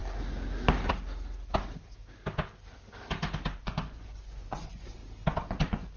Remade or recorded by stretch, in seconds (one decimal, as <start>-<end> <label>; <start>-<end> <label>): 0.0-3.6 recorded; 3.6-5.0 remade; 5.0-5.5 recorded; 5.5-6.0 remade